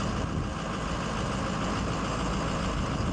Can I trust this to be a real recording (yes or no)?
yes